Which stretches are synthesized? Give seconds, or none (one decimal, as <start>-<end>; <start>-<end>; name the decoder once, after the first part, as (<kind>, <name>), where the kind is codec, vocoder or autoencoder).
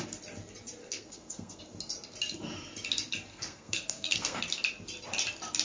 0.8-1.6 (codec, SNAC); 3.3-4.4